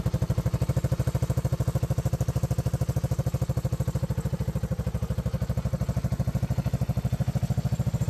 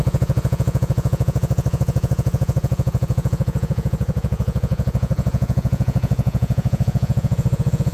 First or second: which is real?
first